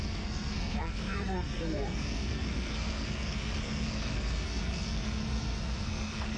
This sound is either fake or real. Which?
fake